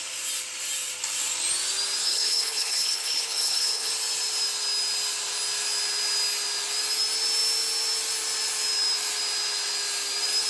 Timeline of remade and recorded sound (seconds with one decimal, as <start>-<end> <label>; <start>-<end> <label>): 0.0-2.0 recorded; 2.0-3.9 remade; 3.9-10.5 recorded